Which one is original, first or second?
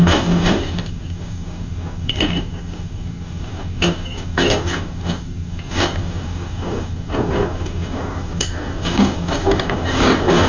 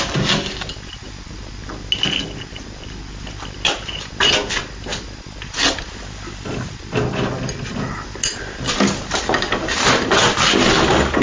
second